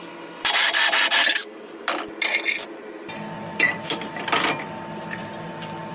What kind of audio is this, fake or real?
real